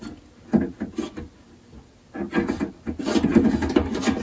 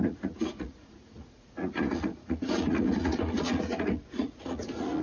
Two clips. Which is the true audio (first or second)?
first